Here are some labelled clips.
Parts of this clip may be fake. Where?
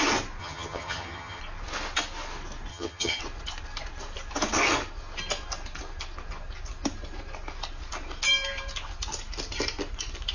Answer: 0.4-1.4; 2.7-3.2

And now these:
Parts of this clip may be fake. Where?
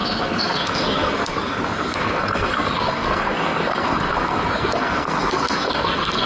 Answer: 0.0-6.3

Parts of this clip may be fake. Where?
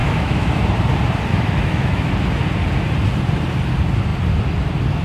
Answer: 0.0-0.6; 1.3-2.1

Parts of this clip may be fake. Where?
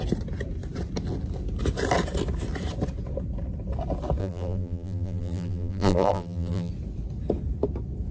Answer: 4.2-6.7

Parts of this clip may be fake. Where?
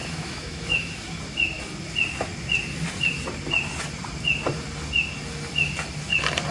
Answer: 0.0-1.2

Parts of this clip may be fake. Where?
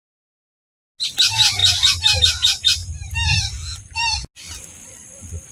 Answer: none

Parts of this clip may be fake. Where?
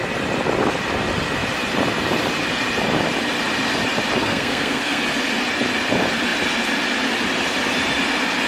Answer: 4.2-5.0